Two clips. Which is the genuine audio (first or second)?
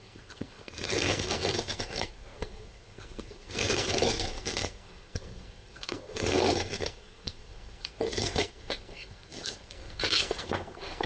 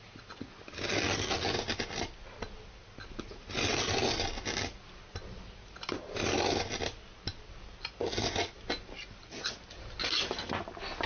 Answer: second